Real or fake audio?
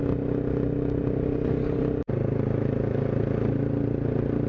real